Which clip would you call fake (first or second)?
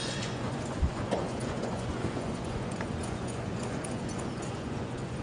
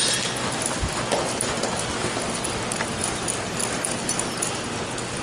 first